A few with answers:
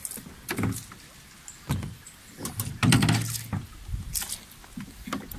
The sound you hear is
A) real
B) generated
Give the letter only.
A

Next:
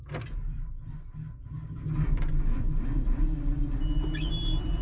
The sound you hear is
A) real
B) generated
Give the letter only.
A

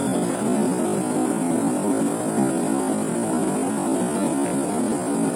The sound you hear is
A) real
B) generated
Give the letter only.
A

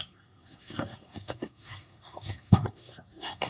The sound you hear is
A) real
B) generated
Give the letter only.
B